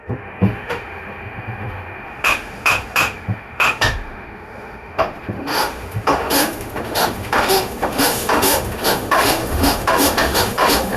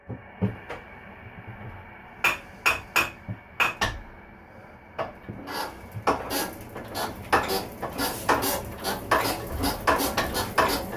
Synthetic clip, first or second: first